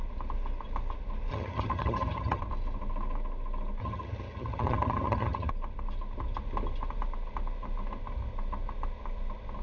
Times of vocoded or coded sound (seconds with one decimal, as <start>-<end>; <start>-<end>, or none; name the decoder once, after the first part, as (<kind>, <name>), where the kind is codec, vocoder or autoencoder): 1.3-2.4 (vocoder, HiFi-GAN); 3.8-5.5